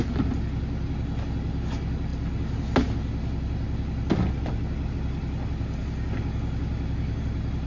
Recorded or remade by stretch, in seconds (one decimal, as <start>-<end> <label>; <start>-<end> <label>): 0.0-7.7 recorded